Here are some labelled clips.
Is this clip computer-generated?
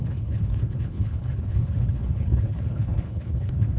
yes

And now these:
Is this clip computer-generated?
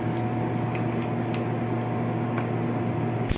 no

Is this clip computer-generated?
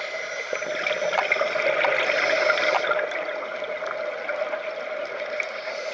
no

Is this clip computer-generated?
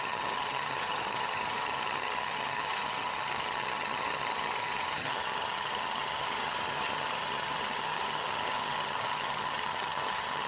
yes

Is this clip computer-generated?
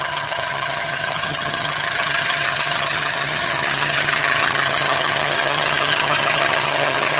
yes